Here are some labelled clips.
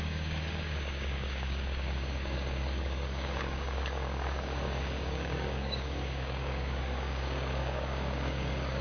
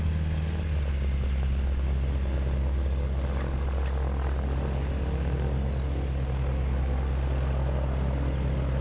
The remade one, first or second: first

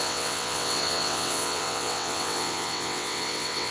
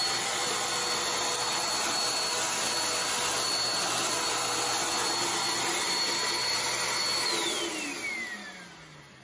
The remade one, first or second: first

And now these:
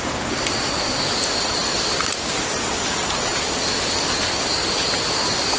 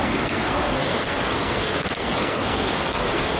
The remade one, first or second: second